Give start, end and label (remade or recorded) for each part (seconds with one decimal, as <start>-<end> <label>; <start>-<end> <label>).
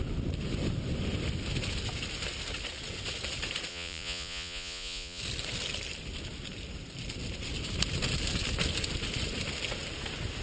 0.0-3.7 recorded; 3.7-5.2 remade; 5.2-10.4 recorded